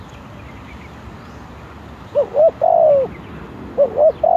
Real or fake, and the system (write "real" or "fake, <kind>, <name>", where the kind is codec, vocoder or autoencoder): real